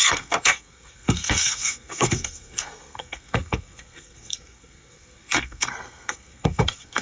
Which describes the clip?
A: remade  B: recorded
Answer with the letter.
A